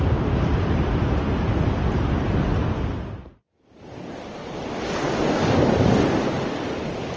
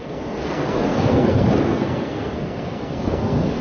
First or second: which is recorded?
first